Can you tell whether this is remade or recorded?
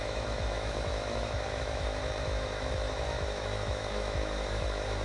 remade